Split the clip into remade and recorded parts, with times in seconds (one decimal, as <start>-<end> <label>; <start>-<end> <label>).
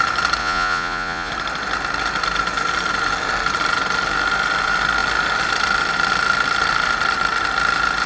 0.0-0.4 recorded; 0.4-1.3 remade; 1.3-8.1 recorded